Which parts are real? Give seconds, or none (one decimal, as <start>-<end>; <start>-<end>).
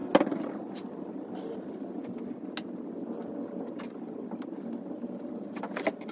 0.0-6.1